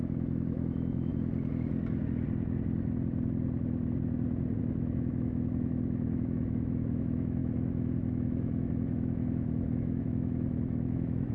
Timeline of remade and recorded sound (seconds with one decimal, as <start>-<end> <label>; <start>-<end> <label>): 0.0-1.1 remade; 1.1-4.6 recorded; 4.6-11.3 remade